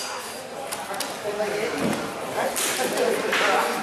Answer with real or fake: real